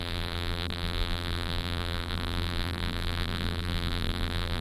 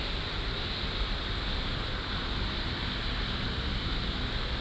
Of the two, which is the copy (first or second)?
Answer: first